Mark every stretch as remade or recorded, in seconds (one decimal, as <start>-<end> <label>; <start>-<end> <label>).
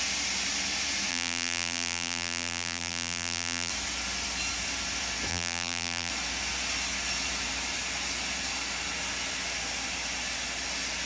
0.0-1.1 recorded; 1.1-3.7 remade; 3.7-5.3 recorded; 5.3-6.1 remade; 6.1-11.1 recorded